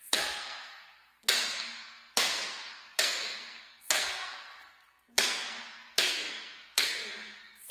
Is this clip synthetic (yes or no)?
yes